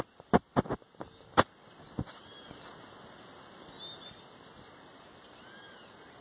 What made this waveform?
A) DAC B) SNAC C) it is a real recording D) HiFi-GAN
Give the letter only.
C